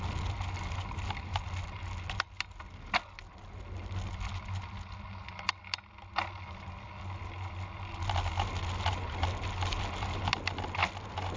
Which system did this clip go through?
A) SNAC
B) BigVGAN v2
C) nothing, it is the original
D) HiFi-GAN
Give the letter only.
C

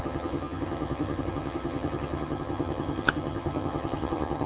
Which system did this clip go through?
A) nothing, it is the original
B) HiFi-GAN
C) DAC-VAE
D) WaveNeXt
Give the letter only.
B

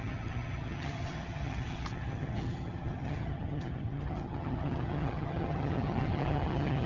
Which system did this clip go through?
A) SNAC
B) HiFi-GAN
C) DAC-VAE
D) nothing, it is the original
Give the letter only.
B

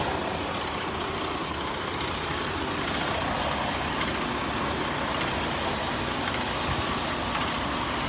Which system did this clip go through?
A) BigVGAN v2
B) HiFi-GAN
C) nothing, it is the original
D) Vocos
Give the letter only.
C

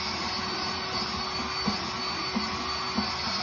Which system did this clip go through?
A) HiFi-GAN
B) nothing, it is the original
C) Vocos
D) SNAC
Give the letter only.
B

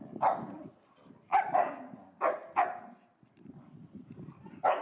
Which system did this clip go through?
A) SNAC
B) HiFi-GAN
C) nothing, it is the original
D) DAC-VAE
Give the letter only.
C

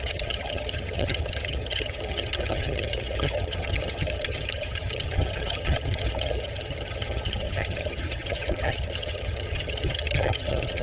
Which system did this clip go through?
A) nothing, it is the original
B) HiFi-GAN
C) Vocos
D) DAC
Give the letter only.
B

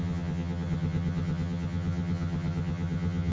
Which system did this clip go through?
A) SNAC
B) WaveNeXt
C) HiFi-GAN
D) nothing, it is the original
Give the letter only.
C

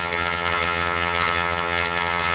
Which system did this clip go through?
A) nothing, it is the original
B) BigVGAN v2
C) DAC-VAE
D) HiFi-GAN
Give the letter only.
D